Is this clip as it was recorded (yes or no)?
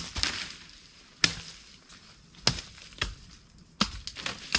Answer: yes